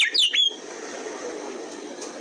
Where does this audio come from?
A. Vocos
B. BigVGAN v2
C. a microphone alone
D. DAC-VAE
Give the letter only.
C